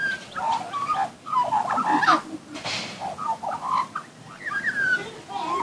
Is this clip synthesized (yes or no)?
no